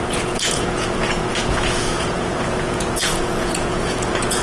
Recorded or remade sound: remade